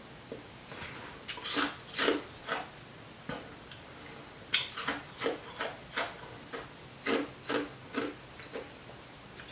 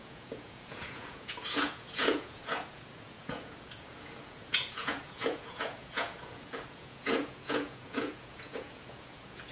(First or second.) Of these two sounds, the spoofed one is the second